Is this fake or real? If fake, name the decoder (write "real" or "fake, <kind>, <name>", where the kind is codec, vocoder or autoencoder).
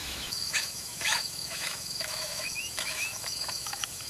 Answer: fake, autoencoder, DAC-VAE